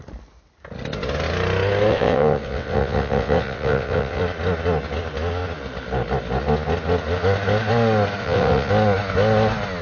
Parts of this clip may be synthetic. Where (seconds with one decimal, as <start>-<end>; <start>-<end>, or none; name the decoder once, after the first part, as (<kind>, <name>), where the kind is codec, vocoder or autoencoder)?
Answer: 1.9-4.2 (vocoder, WaveNeXt); 8.2-8.7